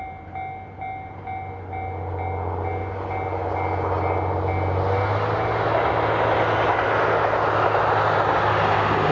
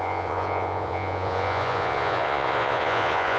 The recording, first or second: first